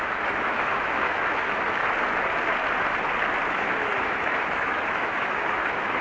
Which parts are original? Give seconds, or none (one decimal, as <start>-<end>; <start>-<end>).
1.8-3.5